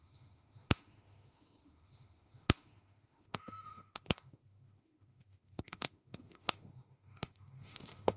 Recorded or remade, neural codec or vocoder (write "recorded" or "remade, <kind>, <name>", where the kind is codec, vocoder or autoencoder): remade, autoencoder, DAC-VAE